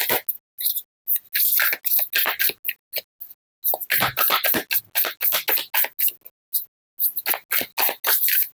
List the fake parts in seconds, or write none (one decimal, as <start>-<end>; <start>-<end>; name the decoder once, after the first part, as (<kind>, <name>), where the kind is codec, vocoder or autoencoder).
none

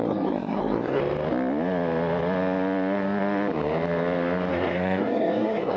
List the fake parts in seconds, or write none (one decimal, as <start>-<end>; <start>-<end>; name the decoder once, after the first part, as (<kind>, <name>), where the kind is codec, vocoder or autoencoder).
0.0-1.0 (codec, SNAC); 4.5-5.8

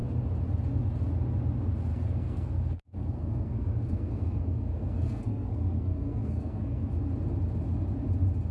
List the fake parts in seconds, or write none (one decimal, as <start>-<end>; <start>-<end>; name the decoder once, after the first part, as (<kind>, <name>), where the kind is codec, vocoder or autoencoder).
1.9-6.9 (codec, SNAC)

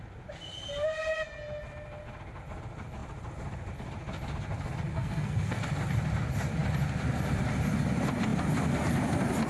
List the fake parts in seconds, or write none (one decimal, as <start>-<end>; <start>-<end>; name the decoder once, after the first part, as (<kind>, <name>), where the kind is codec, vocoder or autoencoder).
4.9-5.6 (codec, SNAC)

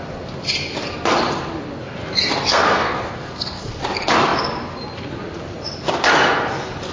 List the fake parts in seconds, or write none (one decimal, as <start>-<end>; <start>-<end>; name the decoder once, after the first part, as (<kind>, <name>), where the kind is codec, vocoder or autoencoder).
2.5-3.8 (codec, SNAC)

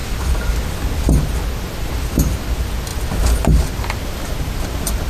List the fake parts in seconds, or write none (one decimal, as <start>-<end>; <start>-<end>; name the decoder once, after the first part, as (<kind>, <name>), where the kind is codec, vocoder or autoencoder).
none

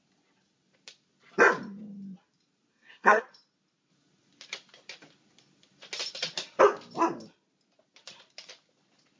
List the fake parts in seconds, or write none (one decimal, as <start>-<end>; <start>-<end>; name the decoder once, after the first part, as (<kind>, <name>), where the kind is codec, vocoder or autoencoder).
2.7-3.2 (codec, SNAC)